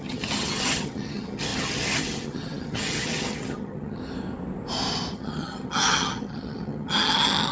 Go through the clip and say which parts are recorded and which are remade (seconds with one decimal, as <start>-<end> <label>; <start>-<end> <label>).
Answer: 0.0-4.0 remade; 4.0-5.1 recorded; 5.1-7.5 remade